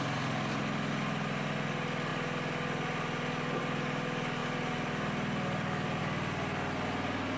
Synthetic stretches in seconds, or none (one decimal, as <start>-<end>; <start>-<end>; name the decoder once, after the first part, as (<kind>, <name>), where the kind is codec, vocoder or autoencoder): 4.4-6.0 (vocoder, BigVGAN v2)